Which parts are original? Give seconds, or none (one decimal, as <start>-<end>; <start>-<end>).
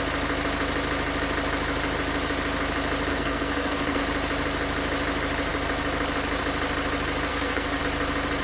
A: 0.0-3.1; 4.0-7.3; 7.8-8.4